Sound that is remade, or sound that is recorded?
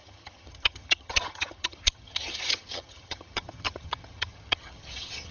remade